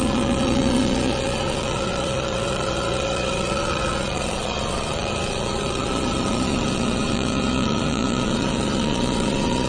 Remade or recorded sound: remade